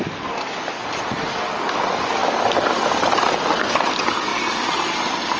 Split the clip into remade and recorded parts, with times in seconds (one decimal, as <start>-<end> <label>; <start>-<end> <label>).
0.0-5.4 recorded